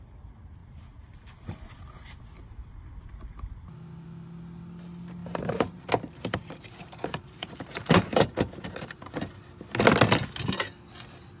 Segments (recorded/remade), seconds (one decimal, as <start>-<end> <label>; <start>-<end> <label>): 0.0-0.6 recorded; 0.6-1.7 remade; 1.7-5.2 recorded; 5.2-5.9 remade; 5.9-6.4 recorded; 6.4-9.3 remade; 9.3-11.4 recorded

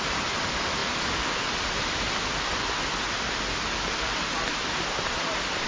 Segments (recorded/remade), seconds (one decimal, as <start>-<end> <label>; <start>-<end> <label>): 0.0-5.7 recorded

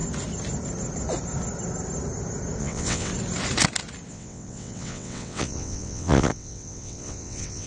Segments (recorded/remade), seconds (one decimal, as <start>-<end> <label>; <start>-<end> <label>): 0.0-2.6 recorded; 2.6-3.1 remade; 3.1-4.1 recorded; 4.1-7.7 remade

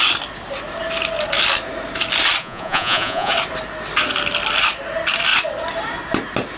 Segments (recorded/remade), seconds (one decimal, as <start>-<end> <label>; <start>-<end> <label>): 0.0-2.4 recorded; 2.4-3.3 remade; 3.3-6.6 recorded